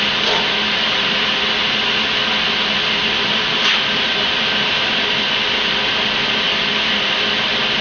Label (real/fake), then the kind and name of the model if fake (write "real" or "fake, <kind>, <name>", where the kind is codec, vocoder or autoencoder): real